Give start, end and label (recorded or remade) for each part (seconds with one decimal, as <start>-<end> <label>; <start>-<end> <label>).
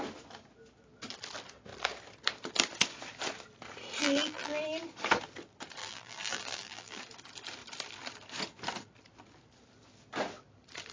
0.0-4.0 recorded; 4.0-4.6 remade; 4.6-5.8 recorded; 5.8-7.0 remade; 7.0-10.9 recorded